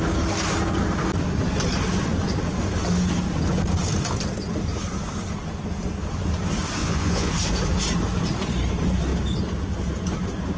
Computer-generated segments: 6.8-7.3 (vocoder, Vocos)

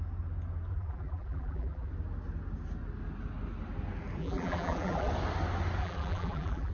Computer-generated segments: 0.7-1.9 (vocoder, BigVGAN v2); 4.2-5.1; 5.8-6.7

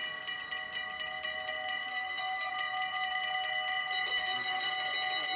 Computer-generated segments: 1.9-2.5 (codec, SNAC); 4.1-4.7

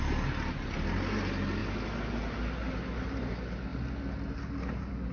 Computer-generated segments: none